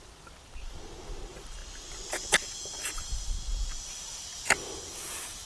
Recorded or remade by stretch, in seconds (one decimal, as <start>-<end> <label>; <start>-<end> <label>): 0.0-5.5 recorded